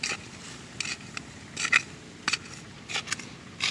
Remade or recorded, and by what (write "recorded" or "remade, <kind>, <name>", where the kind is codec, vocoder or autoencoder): recorded